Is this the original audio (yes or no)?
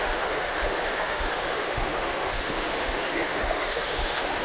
no